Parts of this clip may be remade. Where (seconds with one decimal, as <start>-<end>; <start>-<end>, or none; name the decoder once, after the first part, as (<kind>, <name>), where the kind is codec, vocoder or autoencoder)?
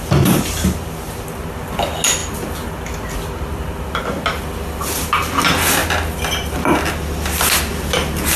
none